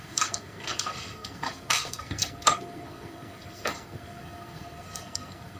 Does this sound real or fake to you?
fake